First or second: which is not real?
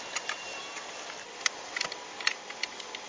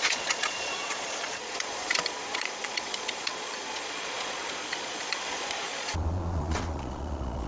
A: second